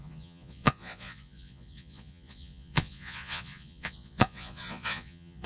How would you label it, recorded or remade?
remade